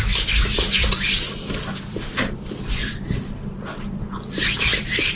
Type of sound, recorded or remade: recorded